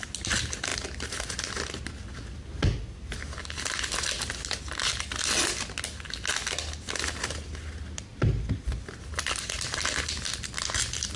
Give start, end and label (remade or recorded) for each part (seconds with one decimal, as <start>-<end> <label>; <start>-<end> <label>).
0.0-11.2 recorded